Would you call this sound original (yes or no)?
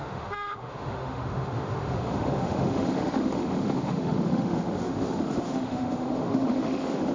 no